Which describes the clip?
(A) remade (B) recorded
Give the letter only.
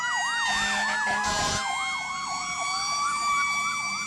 B